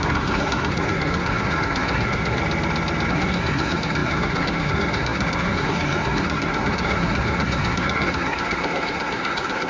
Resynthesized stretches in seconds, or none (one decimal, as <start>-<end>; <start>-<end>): 0.0-2.4; 3.1-9.7